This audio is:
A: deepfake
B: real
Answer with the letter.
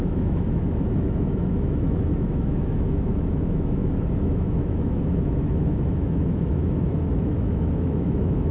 A